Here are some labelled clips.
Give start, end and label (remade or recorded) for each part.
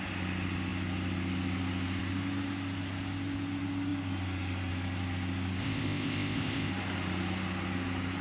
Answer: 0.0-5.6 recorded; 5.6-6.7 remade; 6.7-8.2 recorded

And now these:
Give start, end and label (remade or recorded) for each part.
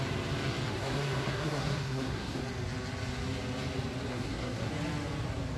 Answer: 0.0-0.7 recorded; 0.7-2.4 remade; 2.4-4.1 recorded; 4.1-4.7 remade; 4.7-5.6 recorded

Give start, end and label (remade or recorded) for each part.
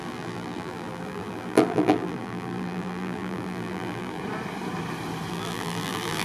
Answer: 0.0-4.2 remade; 4.2-5.3 recorded; 5.3-6.2 remade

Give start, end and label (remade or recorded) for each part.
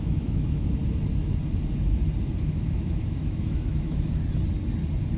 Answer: 0.0-0.8 remade; 0.8-2.5 recorded; 2.5-4.2 remade; 4.2-5.2 recorded